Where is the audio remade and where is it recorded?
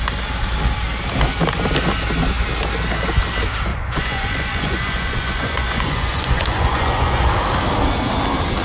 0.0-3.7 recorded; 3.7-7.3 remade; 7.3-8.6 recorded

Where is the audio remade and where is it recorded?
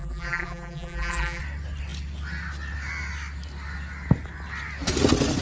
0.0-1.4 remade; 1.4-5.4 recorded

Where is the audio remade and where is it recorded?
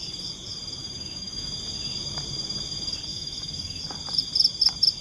0.0-0.8 recorded; 0.8-1.5 remade; 1.5-3.1 recorded; 3.1-3.8 remade; 3.8-5.0 recorded